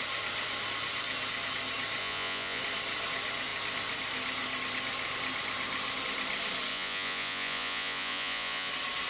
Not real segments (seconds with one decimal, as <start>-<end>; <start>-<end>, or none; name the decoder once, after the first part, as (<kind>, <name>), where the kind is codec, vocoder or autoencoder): 2.0-2.6 (vocoder, Vocos); 6.7-8.7